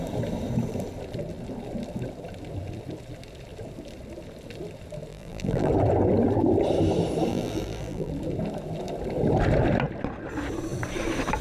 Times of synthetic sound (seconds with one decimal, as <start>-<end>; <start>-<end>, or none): 5.1-5.7; 7.3-8.1